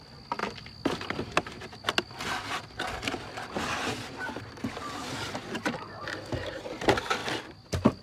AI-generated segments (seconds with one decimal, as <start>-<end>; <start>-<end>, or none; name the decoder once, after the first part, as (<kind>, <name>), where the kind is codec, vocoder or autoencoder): none